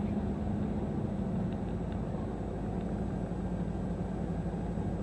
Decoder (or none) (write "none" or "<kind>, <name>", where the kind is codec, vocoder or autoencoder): none